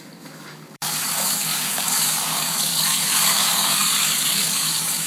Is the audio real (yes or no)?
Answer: no